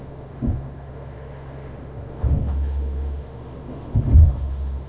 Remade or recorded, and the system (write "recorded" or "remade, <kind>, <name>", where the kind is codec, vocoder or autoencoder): remade, autoencoder, DAC-VAE